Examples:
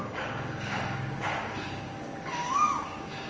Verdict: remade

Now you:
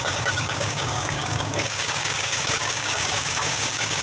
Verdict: remade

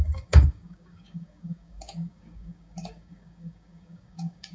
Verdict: remade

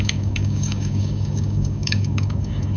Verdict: remade